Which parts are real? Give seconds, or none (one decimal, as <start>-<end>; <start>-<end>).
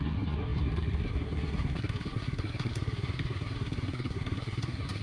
none